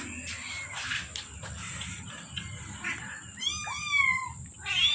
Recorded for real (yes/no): yes